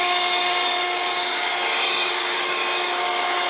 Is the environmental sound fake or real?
fake